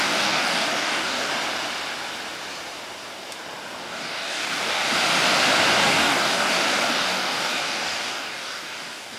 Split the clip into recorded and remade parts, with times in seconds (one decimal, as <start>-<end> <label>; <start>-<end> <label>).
0.0-1.3 remade; 1.3-3.8 recorded; 3.8-4.9 remade; 4.9-5.8 recorded; 5.8-9.2 remade